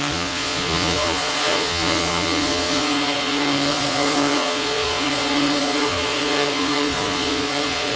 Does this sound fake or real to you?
fake